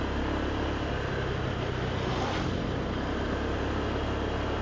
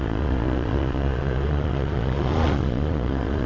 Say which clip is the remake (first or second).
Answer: second